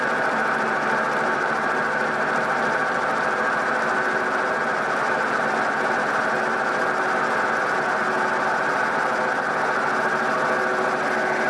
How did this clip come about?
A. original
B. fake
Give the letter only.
A